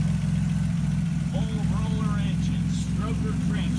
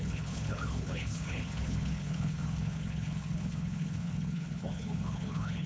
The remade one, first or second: second